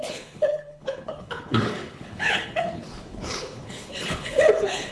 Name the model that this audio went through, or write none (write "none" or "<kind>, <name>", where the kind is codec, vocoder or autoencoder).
codec, HILCodec